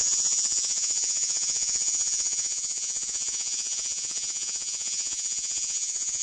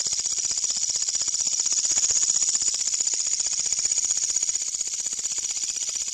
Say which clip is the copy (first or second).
first